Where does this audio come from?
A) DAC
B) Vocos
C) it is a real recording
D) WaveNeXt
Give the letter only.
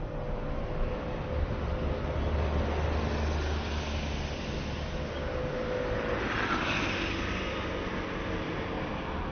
C